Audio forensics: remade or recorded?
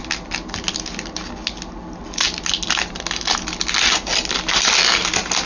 recorded